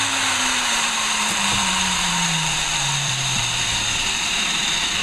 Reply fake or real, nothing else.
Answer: fake